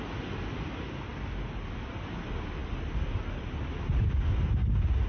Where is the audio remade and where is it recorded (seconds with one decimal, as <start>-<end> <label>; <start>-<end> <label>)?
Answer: 0.0-5.1 recorded